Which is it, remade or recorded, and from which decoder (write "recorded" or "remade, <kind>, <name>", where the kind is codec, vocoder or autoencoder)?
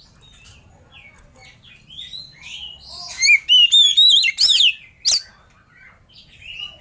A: recorded